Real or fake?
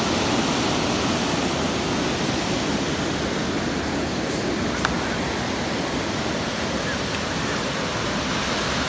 real